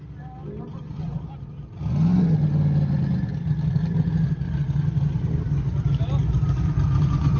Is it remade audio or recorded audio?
recorded